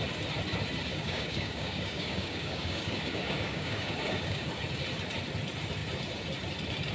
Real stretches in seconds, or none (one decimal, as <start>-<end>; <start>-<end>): 0.0-0.9; 4.5-6.9